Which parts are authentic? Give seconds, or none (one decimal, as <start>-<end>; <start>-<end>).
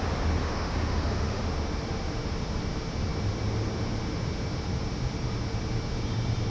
0.0-0.4; 1.4-6.5